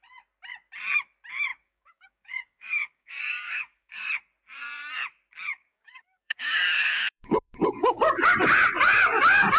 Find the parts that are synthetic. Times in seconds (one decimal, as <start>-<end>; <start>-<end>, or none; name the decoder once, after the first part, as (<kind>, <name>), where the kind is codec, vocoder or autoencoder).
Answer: 1.5-4.1 (codec, DAC); 5.5-8.0